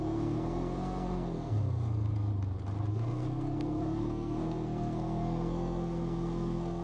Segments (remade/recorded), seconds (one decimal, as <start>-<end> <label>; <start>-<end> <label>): 0.0-2.3 remade; 2.3-2.9 recorded; 2.9-6.8 remade